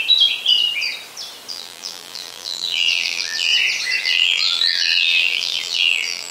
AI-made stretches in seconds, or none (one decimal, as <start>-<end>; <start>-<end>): 1.5-3.5; 4.0-6.3